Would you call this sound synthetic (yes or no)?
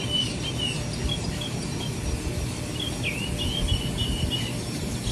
no